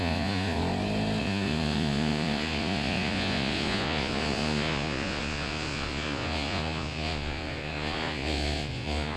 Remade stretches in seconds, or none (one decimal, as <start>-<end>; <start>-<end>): 0.0-0.6; 1.2-9.2